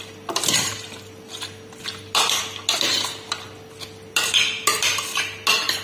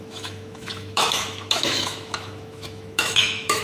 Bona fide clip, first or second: first